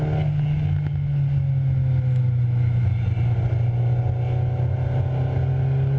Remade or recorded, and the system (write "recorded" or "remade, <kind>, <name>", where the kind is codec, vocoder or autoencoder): recorded